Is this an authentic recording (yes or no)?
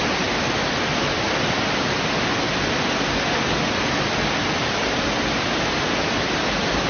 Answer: yes